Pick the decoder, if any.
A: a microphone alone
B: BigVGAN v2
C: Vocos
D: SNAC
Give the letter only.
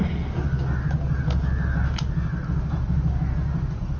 A